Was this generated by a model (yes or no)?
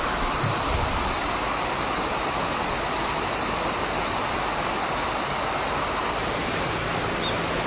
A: no